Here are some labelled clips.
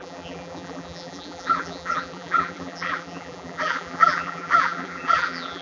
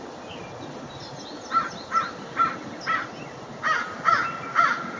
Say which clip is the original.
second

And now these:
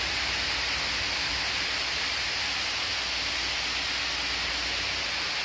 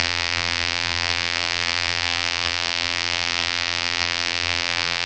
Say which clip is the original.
first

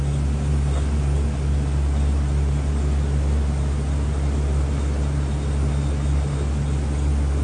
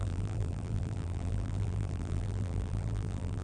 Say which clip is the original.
first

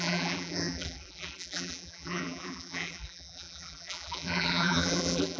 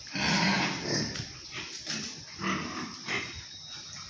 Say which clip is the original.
second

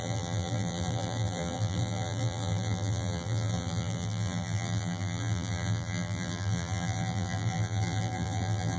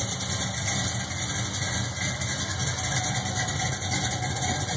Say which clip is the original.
second